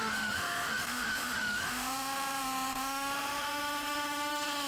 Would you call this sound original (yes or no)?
no